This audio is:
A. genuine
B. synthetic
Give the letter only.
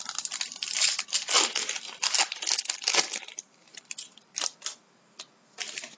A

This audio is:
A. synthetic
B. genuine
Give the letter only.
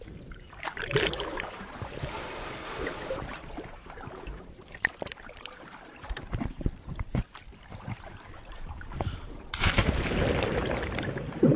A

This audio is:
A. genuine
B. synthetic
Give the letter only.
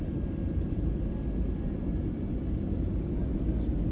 A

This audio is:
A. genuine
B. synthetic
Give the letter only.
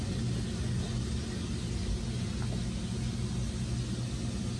A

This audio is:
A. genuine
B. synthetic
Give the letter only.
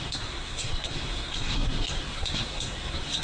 B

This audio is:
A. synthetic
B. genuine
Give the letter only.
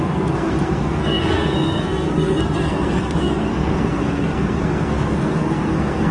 A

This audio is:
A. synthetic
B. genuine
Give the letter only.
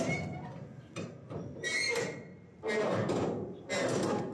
B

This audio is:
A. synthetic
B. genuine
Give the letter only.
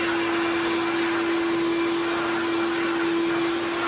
B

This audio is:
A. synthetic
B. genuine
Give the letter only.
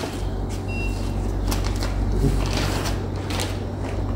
B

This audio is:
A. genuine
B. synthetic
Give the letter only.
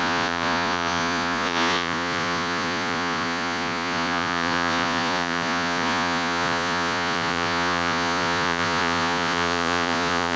B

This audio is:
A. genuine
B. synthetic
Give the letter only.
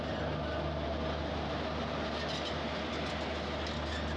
A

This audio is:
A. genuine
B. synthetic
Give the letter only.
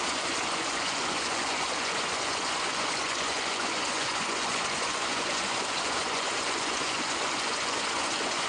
B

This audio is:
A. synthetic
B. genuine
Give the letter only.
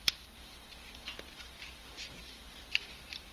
B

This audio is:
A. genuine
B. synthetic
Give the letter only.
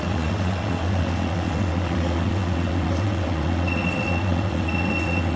B